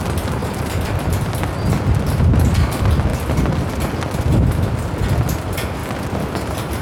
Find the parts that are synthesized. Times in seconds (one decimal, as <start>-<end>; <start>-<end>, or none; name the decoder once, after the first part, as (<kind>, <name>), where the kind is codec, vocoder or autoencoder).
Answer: 0.4-1.4 (vocoder, BigVGAN v2); 3.1-3.7; 5.8-6.8